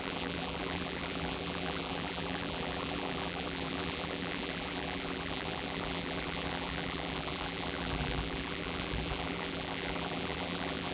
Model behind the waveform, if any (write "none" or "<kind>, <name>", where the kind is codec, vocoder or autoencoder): vocoder, BigVGAN v2